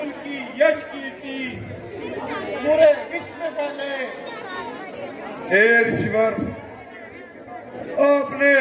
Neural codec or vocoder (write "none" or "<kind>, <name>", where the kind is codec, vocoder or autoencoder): none